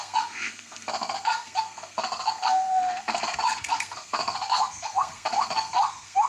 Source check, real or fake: fake